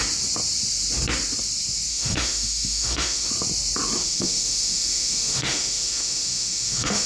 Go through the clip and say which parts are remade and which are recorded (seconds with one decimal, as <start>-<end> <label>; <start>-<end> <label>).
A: 0.0-1.9 recorded; 1.9-3.3 remade; 3.3-4.0 recorded; 4.0-7.1 remade